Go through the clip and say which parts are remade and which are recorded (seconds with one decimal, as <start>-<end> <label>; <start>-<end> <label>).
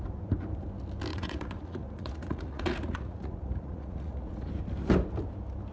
0.0-1.1 recorded; 1.1-4.5 remade; 4.5-5.7 recorded